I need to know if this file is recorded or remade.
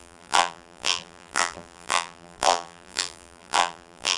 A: remade